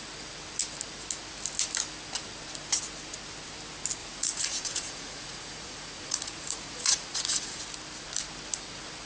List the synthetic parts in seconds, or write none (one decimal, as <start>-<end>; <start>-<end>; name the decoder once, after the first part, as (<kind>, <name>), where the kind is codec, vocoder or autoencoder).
4.0-7.6 (vocoder, Vocos)